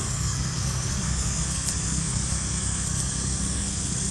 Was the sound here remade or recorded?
remade